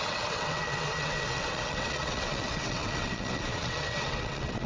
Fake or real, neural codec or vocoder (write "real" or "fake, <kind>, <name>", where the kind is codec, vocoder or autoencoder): fake, vocoder, WaveNeXt